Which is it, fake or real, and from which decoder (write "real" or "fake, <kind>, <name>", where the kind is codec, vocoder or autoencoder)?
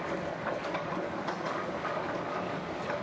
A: fake, codec, DAC